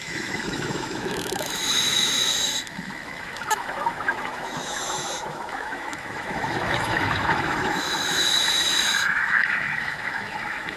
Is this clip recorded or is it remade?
remade